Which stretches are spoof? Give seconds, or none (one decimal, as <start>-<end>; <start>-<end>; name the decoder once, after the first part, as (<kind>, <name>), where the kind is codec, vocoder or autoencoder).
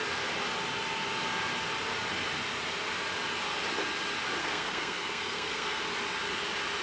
4.4-5.8 (codec, SNAC)